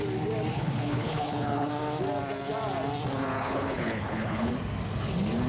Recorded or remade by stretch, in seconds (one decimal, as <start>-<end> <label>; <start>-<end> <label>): 0.0-0.5 recorded; 0.5-1.7 remade; 1.7-3.4 recorded; 3.4-4.5 remade; 4.5-5.5 recorded